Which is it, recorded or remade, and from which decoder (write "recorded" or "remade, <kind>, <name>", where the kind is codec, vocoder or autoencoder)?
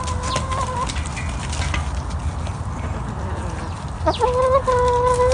recorded